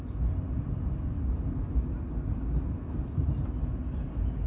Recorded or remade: recorded